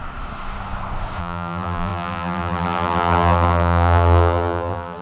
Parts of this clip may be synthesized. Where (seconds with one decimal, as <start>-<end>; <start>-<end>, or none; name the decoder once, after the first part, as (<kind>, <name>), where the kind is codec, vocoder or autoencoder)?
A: 1.2-5.0 (vocoder, BigVGAN v2)